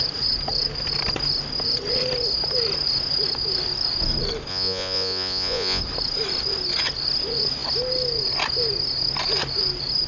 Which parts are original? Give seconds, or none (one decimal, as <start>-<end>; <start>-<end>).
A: 0.0-4.5; 5.8-10.1